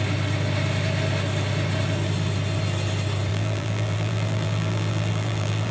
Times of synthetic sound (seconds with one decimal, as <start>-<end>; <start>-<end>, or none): 3.3-5.7